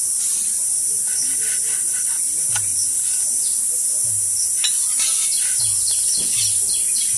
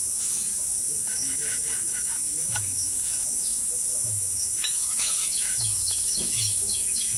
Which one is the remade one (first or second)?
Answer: second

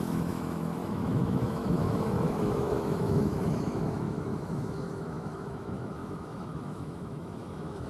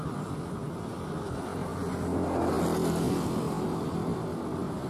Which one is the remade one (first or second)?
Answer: first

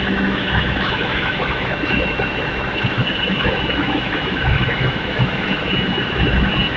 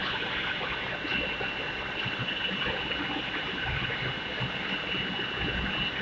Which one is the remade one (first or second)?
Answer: first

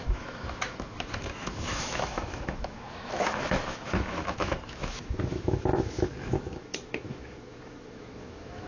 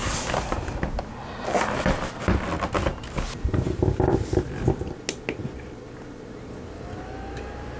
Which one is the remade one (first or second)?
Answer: first